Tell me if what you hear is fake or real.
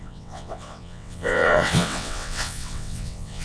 fake